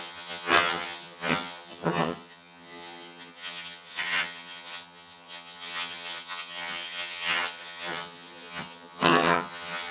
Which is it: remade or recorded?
remade